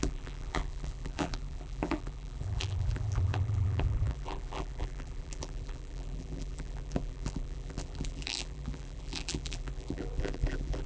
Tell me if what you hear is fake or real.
fake